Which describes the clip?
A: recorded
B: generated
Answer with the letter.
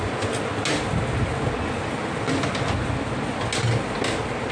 A